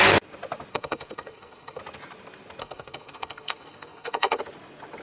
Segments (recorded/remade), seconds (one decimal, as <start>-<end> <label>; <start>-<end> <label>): 0.0-0.7 recorded; 0.7-1.8 remade; 1.8-2.6 recorded; 2.6-4.4 remade; 4.4-5.0 recorded

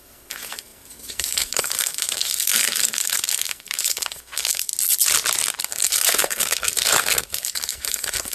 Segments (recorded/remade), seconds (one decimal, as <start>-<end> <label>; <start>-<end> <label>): 0.0-4.7 remade; 4.7-5.6 recorded; 5.6-8.3 remade

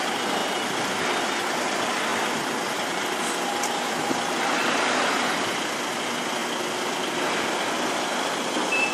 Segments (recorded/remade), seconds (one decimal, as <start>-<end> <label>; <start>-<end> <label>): 0.0-0.4 recorded; 0.4-1.0 remade; 1.0-2.1 recorded; 2.1-5.9 remade; 5.9-8.1 recorded; 8.1-8.9 remade

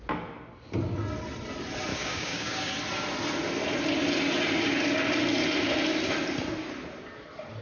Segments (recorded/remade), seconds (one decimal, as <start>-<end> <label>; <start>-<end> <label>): 0.0-1.9 recorded; 1.9-2.7 remade; 2.7-7.6 recorded

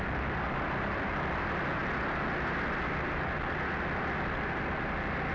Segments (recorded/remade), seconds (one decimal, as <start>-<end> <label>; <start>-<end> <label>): 0.0-5.3 recorded